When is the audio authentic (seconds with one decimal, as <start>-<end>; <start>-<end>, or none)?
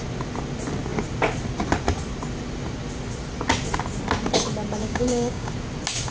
0.0-4.8; 5.5-6.1